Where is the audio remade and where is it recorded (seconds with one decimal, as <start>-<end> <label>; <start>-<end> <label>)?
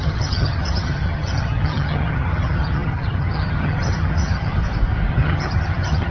0.0-4.6 remade; 4.6-5.1 recorded; 5.1-6.1 remade